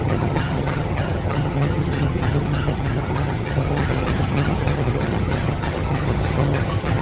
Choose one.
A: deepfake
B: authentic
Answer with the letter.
A